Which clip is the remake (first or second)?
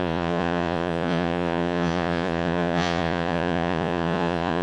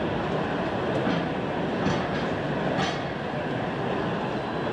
first